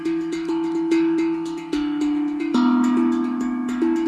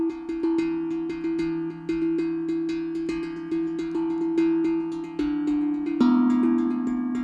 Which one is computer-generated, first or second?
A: first